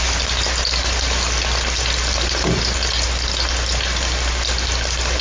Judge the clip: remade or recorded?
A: recorded